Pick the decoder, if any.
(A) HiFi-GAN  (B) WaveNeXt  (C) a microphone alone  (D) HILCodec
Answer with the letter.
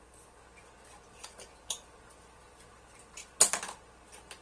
C